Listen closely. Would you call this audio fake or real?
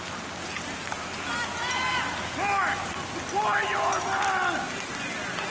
real